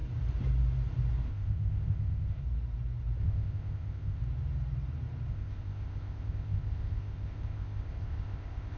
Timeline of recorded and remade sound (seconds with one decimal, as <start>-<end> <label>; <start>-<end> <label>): 0.0-1.3 recorded; 1.3-2.4 remade; 2.4-3.2 recorded; 3.2-4.2 remade; 4.2-5.3 recorded; 5.3-8.8 remade